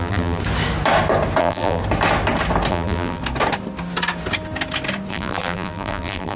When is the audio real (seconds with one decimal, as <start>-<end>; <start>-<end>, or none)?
0.4-1.4; 1.8-2.7; 3.2-5.1